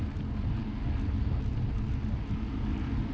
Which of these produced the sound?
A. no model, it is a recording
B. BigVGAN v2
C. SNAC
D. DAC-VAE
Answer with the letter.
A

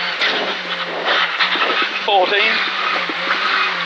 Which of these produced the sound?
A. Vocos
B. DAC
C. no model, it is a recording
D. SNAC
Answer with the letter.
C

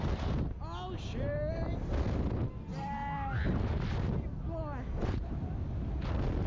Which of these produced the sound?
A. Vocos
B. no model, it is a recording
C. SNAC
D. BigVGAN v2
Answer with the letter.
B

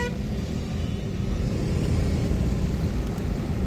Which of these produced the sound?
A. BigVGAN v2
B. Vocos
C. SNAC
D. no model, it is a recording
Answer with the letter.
D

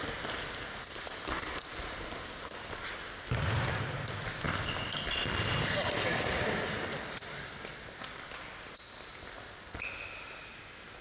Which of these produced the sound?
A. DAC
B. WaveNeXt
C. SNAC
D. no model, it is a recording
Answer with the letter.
D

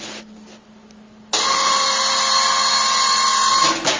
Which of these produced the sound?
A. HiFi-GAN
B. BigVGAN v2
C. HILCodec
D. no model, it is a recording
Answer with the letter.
D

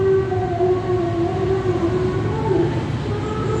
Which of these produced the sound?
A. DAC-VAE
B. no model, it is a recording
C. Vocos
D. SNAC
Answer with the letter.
B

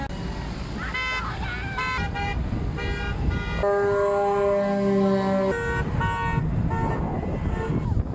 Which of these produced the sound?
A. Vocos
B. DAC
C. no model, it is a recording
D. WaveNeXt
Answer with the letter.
C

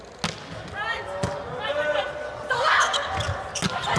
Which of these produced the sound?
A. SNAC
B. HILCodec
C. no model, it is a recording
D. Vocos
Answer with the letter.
C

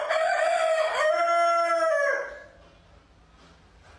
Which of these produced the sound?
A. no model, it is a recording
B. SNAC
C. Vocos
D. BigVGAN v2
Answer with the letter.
A